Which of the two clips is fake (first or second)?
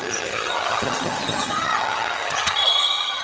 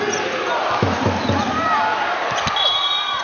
first